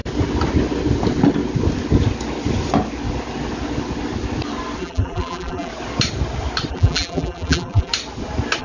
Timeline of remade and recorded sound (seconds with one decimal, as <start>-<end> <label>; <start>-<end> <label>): 0.0-4.8 recorded; 4.8-5.7 remade; 5.7-6.7 recorded; 6.7-7.9 remade; 7.9-8.6 recorded